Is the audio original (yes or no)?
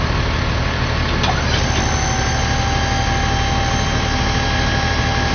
yes